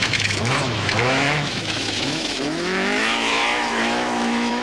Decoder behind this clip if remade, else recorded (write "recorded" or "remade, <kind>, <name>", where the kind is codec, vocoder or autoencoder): remade, autoencoder, DAC-VAE